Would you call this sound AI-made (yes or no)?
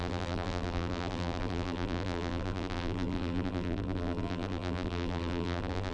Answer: yes